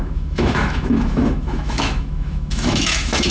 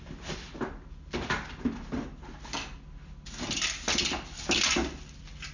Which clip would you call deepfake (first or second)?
first